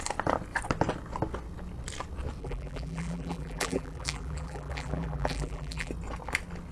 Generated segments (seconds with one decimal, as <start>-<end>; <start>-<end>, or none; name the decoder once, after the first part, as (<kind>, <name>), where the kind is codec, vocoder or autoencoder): 2.4-5.9 (vocoder, BigVGAN v2)